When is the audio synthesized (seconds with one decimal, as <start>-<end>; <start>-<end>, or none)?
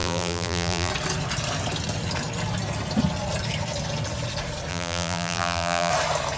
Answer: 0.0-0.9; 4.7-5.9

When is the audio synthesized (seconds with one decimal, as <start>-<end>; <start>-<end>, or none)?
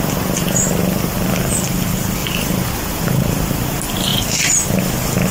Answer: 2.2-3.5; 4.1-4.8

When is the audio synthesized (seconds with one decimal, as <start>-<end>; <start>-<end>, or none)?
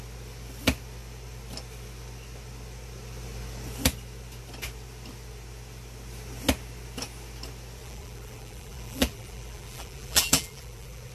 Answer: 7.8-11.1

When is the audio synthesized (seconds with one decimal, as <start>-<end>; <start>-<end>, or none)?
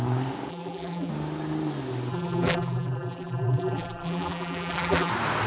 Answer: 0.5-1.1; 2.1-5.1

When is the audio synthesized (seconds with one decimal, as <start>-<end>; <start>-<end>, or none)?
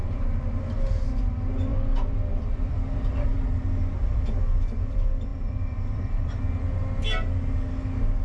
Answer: 0.0-0.6; 1.7-3.6; 5.3-6.5